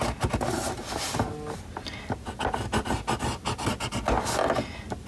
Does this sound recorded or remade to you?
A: recorded